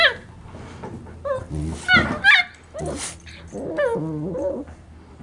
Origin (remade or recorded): recorded